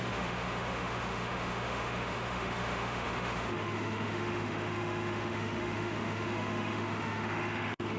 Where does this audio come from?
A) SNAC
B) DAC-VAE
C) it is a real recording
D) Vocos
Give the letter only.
B